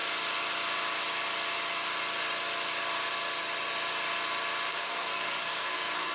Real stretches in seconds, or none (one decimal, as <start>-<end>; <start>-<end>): 0.0-4.7